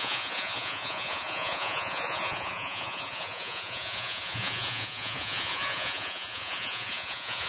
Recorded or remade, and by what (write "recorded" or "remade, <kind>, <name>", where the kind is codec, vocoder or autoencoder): remade, vocoder, Vocos